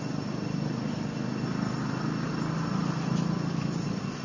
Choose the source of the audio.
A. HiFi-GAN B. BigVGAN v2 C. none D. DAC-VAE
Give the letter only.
C